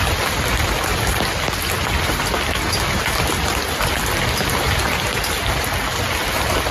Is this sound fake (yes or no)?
no